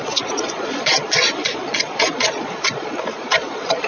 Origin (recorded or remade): remade